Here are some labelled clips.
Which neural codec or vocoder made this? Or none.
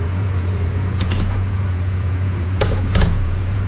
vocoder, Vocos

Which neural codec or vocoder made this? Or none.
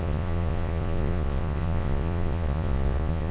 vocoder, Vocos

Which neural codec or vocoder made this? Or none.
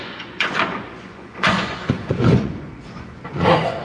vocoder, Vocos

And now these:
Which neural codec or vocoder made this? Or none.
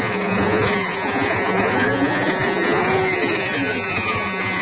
vocoder, Vocos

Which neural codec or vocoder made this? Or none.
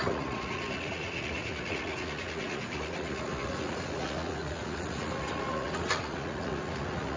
vocoder, Vocos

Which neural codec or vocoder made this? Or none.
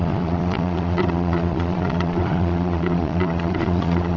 vocoder, Vocos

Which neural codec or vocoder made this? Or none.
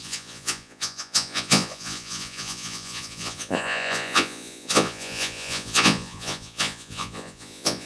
vocoder, Vocos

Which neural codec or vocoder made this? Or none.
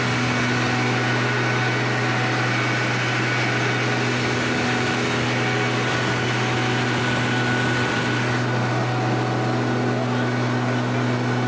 none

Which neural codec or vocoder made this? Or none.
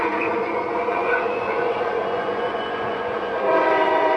vocoder, Vocos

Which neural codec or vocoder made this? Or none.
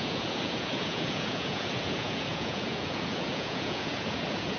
vocoder, Vocos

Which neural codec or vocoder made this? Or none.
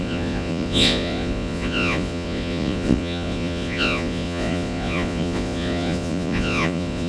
vocoder, Vocos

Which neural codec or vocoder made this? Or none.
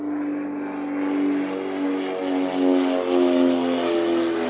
none